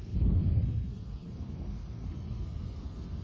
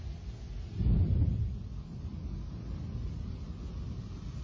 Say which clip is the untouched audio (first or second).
second